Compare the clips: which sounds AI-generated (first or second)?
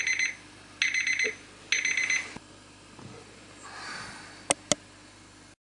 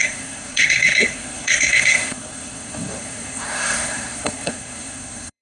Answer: second